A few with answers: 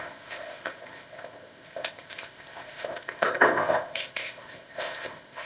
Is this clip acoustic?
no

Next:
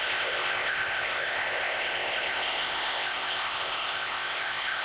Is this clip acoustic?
no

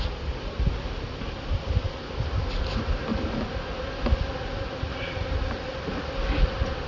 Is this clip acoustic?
yes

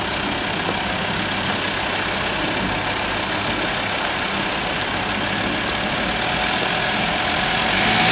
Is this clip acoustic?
yes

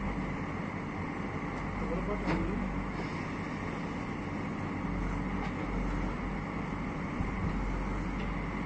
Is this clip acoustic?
yes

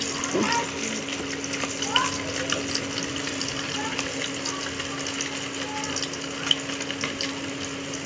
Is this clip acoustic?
yes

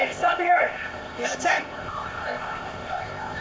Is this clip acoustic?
no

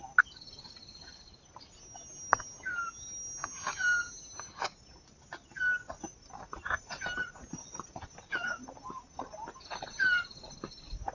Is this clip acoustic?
yes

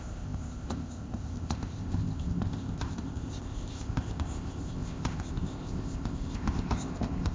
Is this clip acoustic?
no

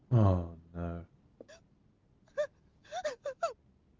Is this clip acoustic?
yes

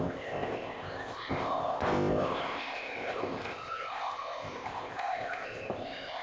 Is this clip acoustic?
no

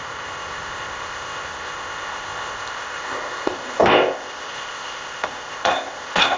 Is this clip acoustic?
no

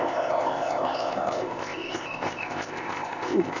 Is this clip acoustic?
no